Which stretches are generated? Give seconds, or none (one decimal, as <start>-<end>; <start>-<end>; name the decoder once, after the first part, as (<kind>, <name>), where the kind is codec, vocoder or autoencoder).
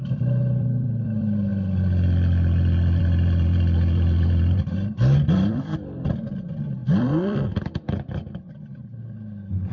0.0-1.5 (vocoder, BigVGAN v2); 3.0-9.7